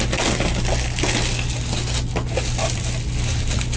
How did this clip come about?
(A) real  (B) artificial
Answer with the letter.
A